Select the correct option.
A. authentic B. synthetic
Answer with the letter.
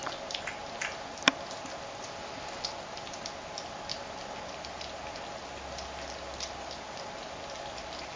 A